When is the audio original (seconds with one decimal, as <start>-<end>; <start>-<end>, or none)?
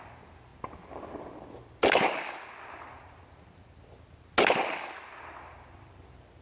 0.0-6.4